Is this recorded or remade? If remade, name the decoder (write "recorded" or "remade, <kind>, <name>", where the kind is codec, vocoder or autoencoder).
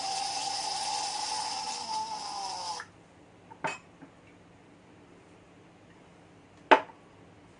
recorded